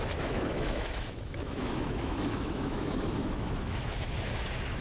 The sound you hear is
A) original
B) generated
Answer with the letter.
B